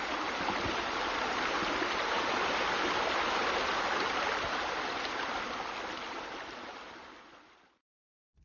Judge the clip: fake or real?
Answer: real